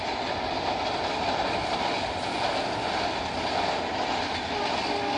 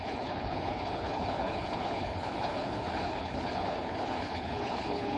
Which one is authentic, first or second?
first